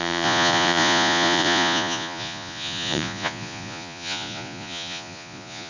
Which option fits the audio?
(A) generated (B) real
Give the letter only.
A